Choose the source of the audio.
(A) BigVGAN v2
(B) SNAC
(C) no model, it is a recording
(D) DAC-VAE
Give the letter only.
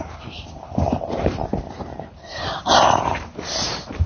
A